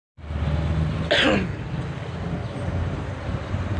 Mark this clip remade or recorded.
recorded